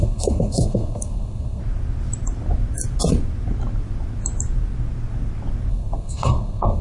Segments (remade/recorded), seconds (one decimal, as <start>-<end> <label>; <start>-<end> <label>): 0.0-1.6 remade; 1.6-5.7 recorded; 5.7-6.8 remade